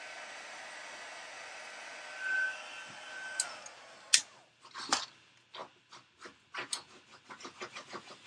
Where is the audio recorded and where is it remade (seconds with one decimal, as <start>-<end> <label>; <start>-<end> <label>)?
0.0-8.3 recorded